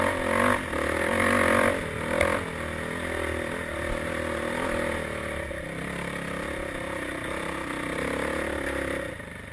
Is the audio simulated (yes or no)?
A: no